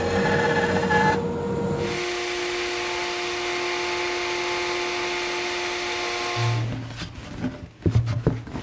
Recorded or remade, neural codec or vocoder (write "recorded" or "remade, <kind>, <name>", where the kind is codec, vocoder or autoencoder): recorded